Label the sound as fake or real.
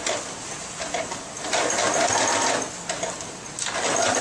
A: real